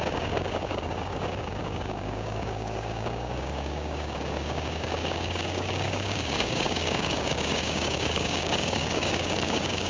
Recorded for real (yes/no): no